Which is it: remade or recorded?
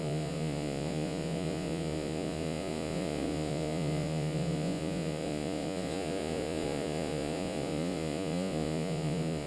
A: remade